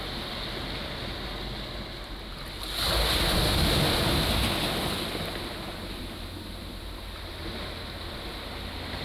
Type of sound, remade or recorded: recorded